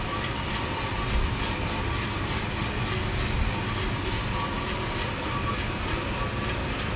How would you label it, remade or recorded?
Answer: recorded